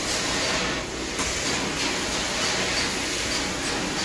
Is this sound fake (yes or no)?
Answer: no